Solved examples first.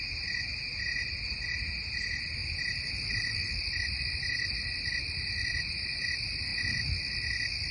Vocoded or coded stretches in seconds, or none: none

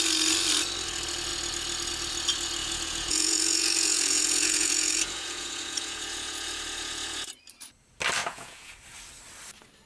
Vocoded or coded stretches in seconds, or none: 2.6-7.3 (vocoder, Vocos); 8.2-8.7

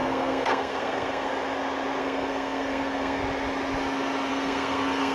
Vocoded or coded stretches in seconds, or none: 0.0-1.3 (codec, SNAC); 2.0-3.2; 4.3-5.1